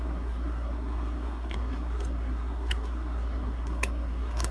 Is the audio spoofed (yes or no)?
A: yes